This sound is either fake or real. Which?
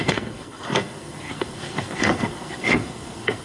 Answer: fake